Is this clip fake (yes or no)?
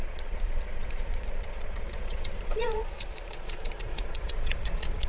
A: yes